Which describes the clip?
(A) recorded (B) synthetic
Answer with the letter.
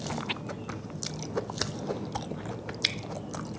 A